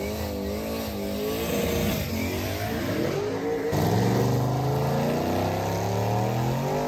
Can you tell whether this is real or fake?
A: real